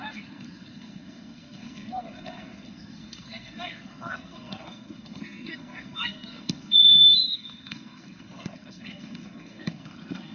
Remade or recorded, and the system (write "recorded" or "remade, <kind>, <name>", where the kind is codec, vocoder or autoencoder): remade, codec, SNAC